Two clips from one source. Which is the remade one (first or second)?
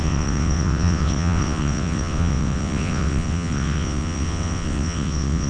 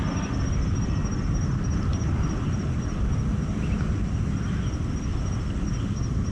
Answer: first